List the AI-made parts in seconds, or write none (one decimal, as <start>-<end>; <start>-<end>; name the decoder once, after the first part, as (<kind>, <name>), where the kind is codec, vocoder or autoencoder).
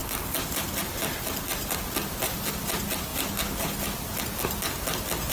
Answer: none